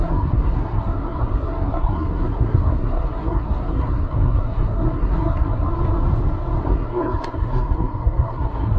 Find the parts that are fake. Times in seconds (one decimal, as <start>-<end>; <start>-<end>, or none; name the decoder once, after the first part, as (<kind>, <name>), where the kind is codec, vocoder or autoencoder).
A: 0.0-5.7 (codec, SNAC); 6.6-8.8